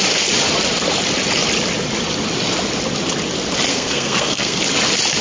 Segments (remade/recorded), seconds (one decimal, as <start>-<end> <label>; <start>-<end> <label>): 0.0-3.7 recorded; 3.7-4.6 remade; 4.6-5.2 recorded

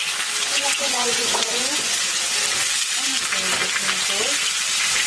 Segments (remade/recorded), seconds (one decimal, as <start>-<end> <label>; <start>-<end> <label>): 0.0-0.4 recorded; 0.4-2.2 remade; 2.2-5.1 recorded

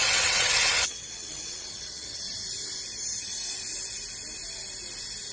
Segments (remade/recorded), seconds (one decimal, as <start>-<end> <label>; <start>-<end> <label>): 0.0-2.2 remade; 2.2-5.3 recorded

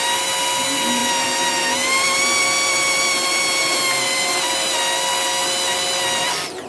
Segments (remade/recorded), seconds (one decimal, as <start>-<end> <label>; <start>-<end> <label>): 0.0-6.7 recorded

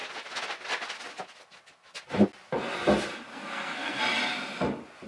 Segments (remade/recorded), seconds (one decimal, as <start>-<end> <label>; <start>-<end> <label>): 0.0-3.3 recorded; 3.3-4.0 remade; 4.0-5.1 recorded

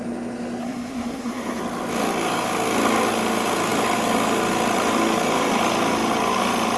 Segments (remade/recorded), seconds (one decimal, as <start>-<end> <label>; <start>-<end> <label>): 0.0-0.6 recorded; 0.6-1.6 remade; 1.6-6.8 recorded

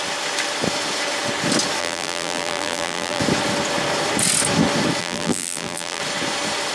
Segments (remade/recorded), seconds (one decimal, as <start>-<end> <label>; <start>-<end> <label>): 0.0-1.8 recorded; 1.8-3.2 remade; 3.2-5.0 recorded; 5.0-6.0 remade; 6.0-6.7 recorded